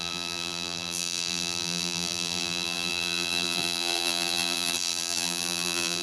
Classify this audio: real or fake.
fake